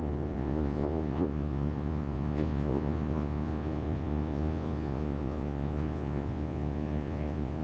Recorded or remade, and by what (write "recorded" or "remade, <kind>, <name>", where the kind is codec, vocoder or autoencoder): remade, vocoder, Vocos